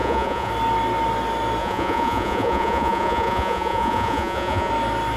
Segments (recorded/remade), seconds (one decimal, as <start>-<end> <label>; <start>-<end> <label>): 0.0-0.5 remade; 0.5-1.6 recorded; 1.6-4.7 remade; 4.7-5.2 recorded